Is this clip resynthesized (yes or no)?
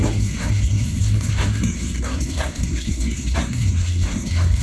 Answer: yes